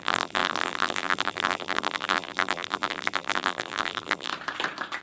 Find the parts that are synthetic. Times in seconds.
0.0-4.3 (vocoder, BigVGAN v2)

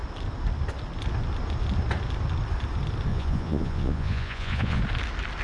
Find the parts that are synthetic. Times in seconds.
3.1-4.8 (vocoder, Vocos)

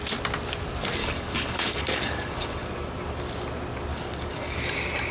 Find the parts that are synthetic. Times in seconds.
1.0-2.7 (codec, DAC); 3.9-4.6